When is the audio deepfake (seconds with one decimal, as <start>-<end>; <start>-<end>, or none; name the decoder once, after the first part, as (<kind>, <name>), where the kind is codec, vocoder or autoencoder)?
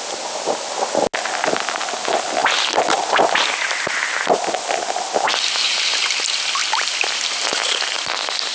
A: none